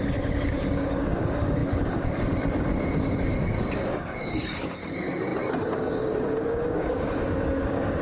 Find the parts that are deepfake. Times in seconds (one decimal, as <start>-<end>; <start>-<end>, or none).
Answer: 0.0-8.0